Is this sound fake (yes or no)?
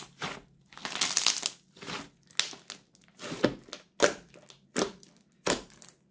no